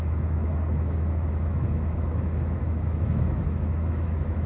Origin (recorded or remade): remade